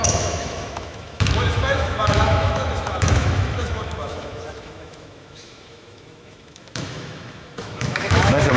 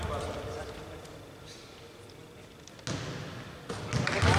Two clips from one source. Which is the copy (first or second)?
first